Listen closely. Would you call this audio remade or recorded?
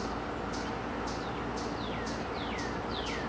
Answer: recorded